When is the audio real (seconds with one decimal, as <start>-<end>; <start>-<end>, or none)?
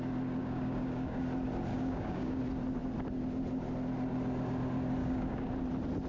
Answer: 0.0-0.4; 1.2-1.7; 2.4-5.0; 5.5-6.1